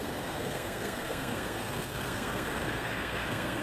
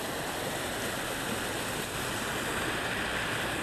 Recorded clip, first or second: second